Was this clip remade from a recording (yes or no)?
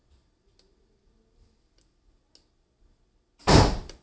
no